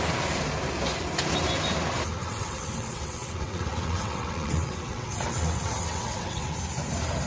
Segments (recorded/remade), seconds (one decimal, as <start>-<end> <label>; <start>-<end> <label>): 0.0-2.2 recorded; 2.2-6.6 remade; 6.6-7.3 recorded